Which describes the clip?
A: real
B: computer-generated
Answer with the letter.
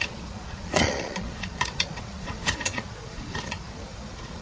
B